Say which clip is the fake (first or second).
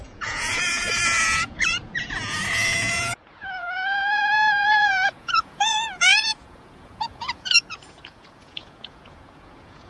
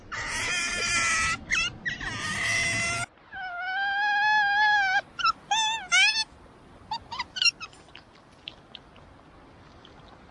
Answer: first